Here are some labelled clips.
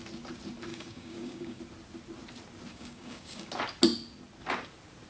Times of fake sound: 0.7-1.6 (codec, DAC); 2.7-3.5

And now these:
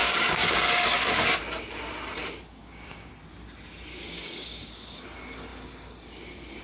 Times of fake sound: 0.0-1.4 (codec, DAC); 2.6-3.1; 3.9-4.7

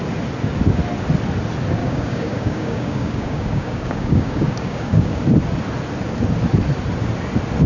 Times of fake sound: 1.8-5.2 (codec, DAC)

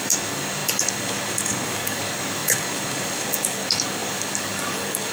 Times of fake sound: 0.0-5.1 (codec, DAC)

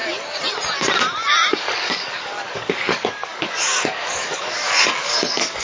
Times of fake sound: 1.6-5.6 (codec, DAC)

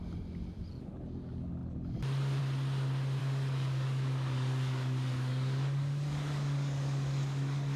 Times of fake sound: 3.2-7.8 (codec, DAC)